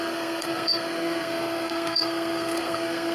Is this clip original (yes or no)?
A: no